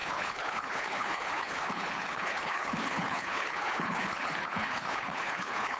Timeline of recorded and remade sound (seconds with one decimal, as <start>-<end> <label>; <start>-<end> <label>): 0.0-5.8 remade